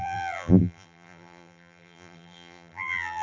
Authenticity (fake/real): fake